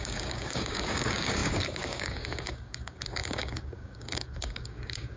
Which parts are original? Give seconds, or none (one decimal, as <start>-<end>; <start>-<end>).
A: none